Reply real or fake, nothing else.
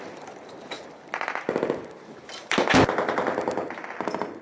real